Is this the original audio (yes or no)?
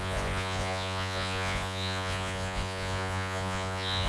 no